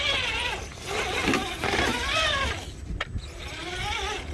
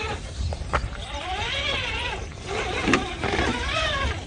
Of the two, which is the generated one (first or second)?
second